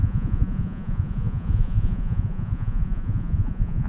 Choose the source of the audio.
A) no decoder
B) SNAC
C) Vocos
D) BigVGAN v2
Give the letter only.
C